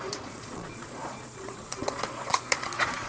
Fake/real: fake